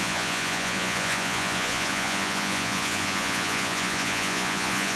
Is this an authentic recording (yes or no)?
no